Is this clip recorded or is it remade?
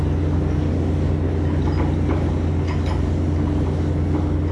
recorded